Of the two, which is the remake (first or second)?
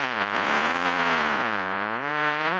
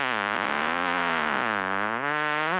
first